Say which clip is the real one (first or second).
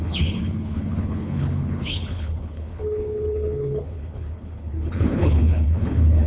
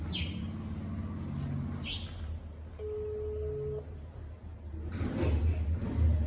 second